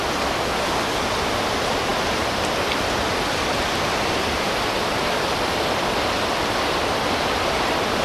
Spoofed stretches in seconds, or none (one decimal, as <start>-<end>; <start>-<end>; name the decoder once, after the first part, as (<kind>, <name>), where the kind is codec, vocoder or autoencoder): 1.9-3.5 (vocoder, BigVGAN v2)